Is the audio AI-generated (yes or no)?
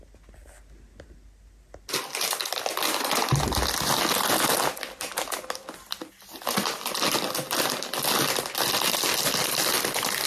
no